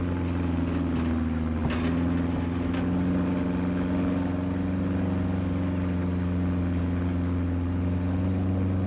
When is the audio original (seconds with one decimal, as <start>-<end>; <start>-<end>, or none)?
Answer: 0.0-8.9